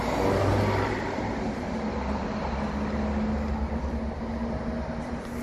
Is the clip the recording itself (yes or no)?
yes